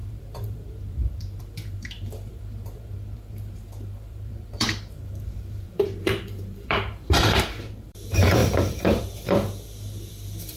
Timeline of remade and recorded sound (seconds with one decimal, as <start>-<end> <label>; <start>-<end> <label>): 0.0-10.6 remade